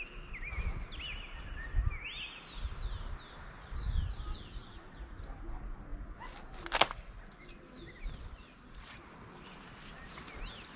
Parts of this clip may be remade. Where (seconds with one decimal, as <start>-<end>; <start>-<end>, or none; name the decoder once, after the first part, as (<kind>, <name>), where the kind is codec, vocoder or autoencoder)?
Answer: 4.6-5.2 (vocoder, Vocos)